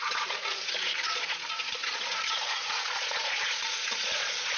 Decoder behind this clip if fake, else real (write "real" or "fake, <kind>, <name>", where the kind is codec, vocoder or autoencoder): fake, vocoder, Vocos